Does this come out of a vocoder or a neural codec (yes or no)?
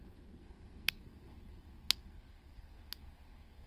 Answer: yes